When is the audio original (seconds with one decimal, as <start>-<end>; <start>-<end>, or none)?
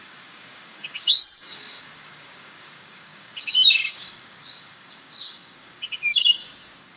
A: none